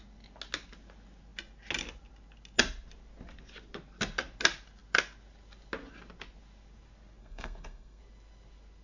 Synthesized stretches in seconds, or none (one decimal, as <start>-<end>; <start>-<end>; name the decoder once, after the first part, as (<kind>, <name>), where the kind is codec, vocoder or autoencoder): 7.2-8.0 (codec, SNAC)